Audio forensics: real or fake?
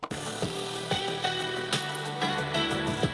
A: real